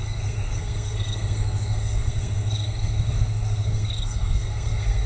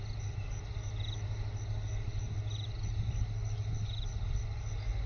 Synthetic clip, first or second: first